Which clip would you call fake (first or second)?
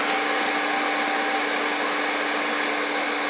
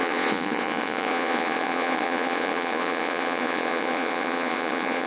second